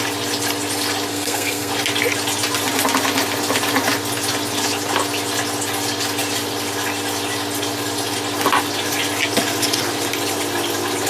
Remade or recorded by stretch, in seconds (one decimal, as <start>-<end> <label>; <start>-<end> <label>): 0.0-1.1 recorded; 1.1-1.7 remade; 1.7-11.1 recorded